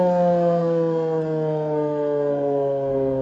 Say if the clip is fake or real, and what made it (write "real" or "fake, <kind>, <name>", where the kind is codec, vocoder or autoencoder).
fake, codec, SNAC